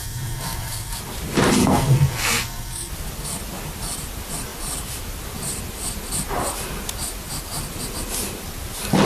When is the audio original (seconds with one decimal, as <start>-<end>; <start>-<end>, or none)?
1.0-1.6; 2.9-9.1